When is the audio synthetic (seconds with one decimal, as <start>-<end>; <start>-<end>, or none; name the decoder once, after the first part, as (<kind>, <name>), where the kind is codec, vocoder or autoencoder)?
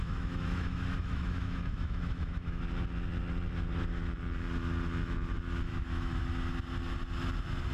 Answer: 0.0-2.6 (autoencoder, DAC-VAE); 5.7-6.2